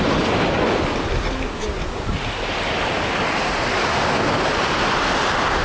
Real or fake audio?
real